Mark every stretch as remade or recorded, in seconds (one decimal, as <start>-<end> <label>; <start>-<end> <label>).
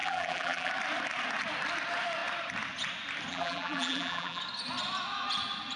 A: 0.0-0.7 remade; 0.7-3.3 recorded; 3.3-4.4 remade; 4.4-5.8 recorded